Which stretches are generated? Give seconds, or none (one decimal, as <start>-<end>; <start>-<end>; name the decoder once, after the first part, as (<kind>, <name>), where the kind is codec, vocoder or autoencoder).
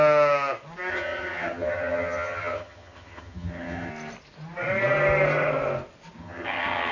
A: 0.9-3.9 (vocoder, HiFi-GAN); 6.2-6.9